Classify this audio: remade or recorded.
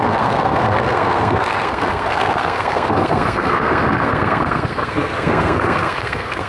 remade